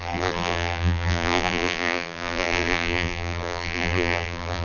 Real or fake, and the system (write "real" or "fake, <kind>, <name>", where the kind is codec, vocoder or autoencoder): fake, vocoder, BigVGAN v2